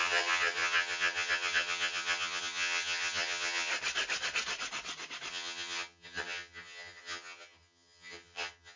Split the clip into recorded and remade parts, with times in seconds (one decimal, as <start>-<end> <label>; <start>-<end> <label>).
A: 0.0-3.7 remade; 3.7-5.3 recorded; 5.3-8.8 remade